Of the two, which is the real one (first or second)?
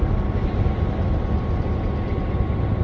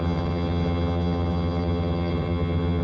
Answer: first